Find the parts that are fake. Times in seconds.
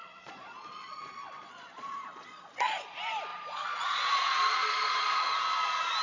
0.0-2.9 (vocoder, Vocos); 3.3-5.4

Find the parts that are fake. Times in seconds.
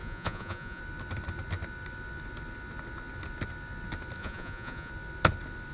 0.0-0.8 (vocoder, Vocos); 4.2-4.9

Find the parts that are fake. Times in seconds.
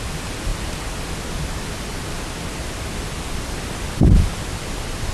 none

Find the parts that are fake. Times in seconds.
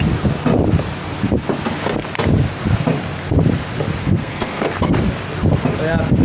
4.0-5.0 (codec, SNAC)